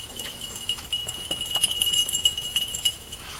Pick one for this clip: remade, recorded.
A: remade